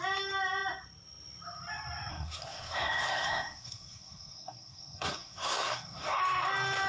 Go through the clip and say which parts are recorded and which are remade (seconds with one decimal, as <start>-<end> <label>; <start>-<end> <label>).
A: 0.0-2.1 recorded; 2.1-6.2 remade; 6.2-6.9 recorded